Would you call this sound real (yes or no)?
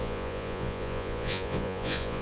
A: no